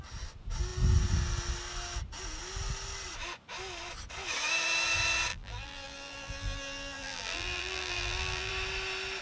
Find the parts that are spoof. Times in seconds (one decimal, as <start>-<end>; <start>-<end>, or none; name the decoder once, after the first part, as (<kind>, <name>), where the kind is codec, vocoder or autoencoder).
5.3-8.5 (vocoder, BigVGAN v2)